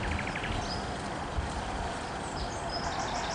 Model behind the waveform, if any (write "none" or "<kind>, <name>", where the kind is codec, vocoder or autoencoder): none